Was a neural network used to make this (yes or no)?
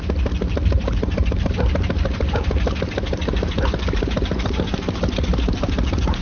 no